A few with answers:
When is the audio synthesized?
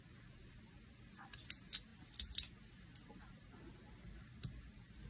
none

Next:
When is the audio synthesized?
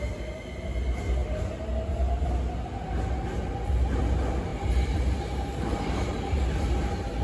4.5-6.4 (vocoder, BigVGAN v2)